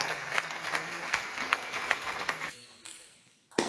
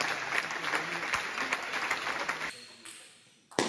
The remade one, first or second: first